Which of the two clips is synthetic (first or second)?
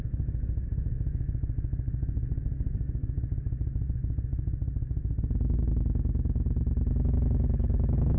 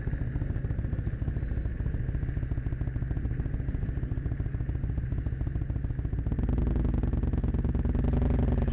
first